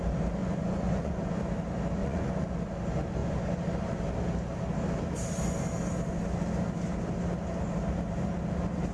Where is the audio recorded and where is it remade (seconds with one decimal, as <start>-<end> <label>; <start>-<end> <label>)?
0.0-0.4 recorded; 0.4-1.3 remade; 1.3-2.0 recorded; 2.0-2.5 remade; 2.5-8.9 recorded